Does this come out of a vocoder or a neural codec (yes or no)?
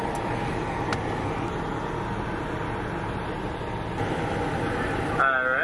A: no